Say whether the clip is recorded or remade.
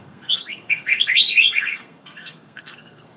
remade